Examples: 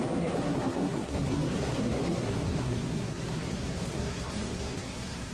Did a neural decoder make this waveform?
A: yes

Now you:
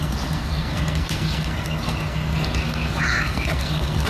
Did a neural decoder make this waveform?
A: yes